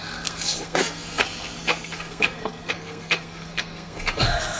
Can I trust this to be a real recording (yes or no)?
no